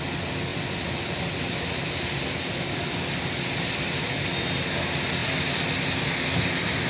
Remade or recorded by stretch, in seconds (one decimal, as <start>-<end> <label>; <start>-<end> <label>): 0.0-6.9 recorded